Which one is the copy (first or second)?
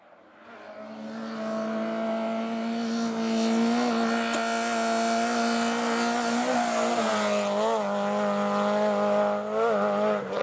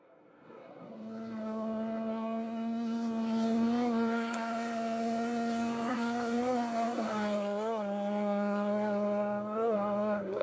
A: second